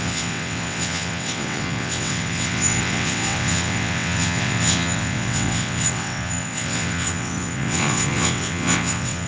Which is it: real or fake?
fake